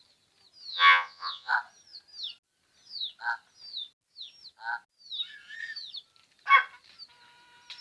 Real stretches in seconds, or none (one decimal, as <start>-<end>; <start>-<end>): 0.0-0.7; 1.5-7.8